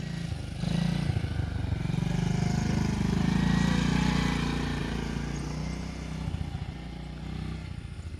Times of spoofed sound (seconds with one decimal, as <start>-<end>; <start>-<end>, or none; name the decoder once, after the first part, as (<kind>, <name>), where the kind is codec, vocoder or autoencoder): 4.8-5.4 (vocoder, BigVGAN v2)